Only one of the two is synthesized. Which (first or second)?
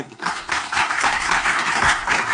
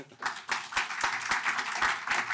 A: first